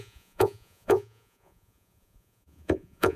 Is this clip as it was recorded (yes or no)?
no